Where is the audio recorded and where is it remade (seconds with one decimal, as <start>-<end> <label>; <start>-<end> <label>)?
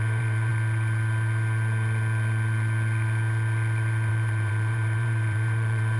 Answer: 0.0-0.5 remade; 0.5-4.1 recorded; 4.1-6.0 remade